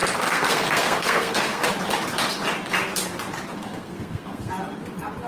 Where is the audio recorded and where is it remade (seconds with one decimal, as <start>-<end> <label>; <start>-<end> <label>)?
0.0-1.7 remade; 1.7-3.6 recorded; 3.6-4.5 remade; 4.5-5.3 recorded